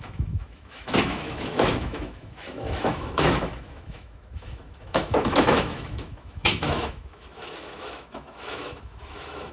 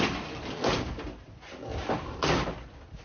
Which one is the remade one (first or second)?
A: first